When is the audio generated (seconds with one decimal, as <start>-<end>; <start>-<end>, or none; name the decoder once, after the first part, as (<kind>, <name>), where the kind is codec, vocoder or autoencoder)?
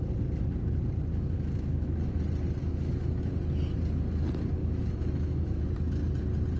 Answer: 1.1-2.2 (autoencoder, DAC-VAE); 2.6-3.3; 4.6-5.6